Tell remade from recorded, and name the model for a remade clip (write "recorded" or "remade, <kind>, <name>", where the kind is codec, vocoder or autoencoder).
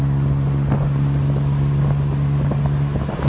recorded